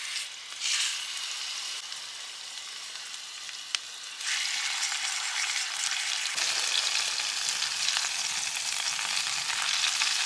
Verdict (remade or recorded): recorded